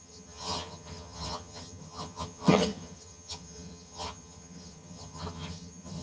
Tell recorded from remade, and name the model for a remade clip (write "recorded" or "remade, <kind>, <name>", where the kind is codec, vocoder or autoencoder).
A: remade, vocoder, HiFi-GAN